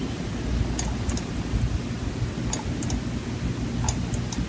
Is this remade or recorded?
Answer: recorded